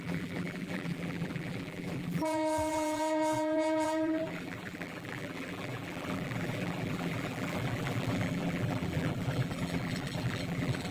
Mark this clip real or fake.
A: fake